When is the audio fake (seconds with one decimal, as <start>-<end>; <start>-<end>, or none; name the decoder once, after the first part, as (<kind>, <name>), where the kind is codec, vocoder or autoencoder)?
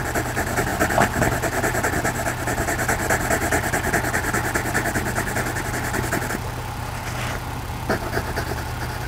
none